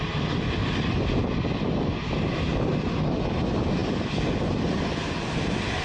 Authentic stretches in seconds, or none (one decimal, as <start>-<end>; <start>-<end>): 0.0-5.8